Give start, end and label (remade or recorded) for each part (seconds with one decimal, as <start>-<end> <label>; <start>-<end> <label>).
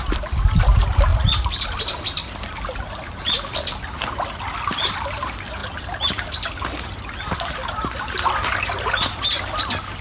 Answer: 0.0-10.0 recorded